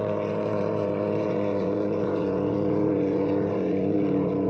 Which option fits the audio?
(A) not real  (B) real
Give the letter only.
A